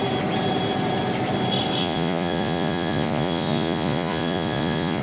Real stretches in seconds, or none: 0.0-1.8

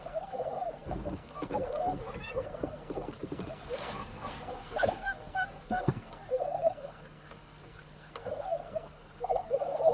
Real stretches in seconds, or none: none

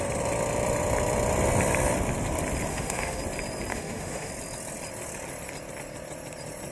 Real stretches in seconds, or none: 0.0-2.7; 3.2-3.7; 4.3-6.7

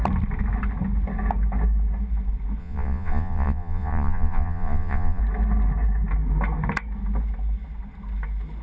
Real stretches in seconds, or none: 0.0-2.6; 5.2-8.6

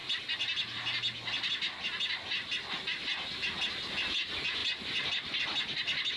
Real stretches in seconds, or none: 0.0-6.2

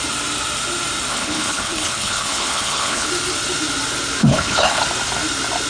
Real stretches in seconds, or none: 0.0-1.1; 3.1-4.2; 4.8-5.7

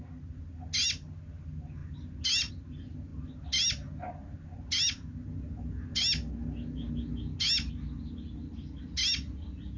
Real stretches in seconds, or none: 0.0-9.8